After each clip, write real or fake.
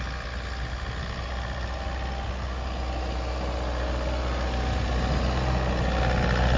real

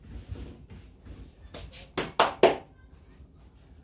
real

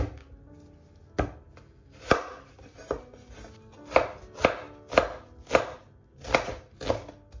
real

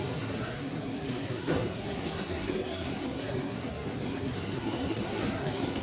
fake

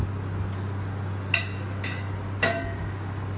real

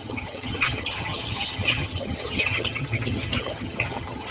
fake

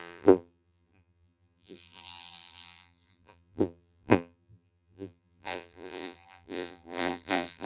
fake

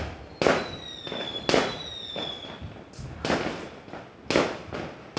real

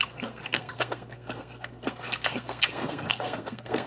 fake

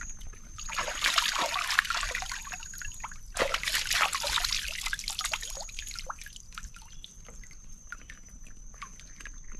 real